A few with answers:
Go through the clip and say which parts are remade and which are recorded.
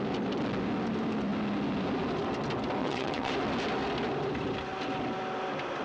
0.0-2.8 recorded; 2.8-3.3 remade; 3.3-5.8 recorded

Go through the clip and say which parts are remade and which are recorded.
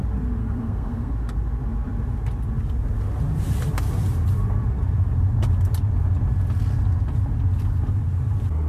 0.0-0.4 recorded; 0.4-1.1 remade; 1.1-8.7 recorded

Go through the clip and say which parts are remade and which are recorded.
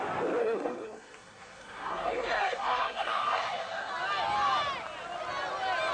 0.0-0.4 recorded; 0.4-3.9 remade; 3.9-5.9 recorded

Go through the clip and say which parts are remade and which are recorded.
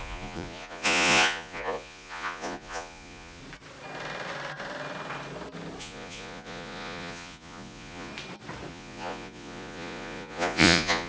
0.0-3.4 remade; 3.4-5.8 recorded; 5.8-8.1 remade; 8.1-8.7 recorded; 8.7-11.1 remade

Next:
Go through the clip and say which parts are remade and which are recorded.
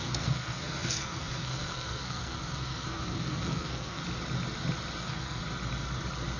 0.0-4.0 remade; 4.0-5.0 recorded; 5.0-5.4 remade; 5.4-6.4 recorded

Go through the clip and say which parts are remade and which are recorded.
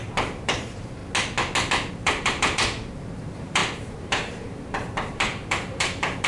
0.0-1.0 remade; 1.0-1.9 recorded; 1.9-6.3 remade